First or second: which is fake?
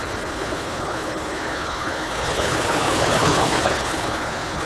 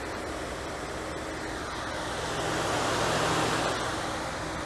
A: first